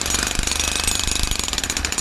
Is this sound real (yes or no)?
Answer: no